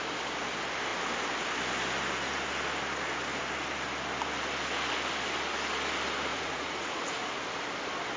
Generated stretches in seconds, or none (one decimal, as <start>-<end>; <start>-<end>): 6.3-7.3

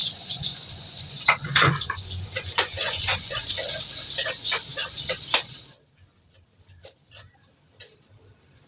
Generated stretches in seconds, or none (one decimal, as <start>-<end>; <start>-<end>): 0.0-3.5